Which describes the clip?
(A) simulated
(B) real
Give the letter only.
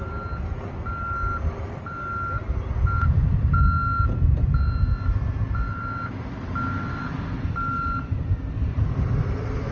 B